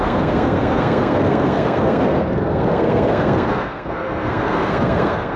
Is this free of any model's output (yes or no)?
no